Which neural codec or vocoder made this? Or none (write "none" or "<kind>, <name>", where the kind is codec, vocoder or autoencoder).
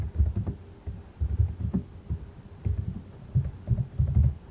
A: none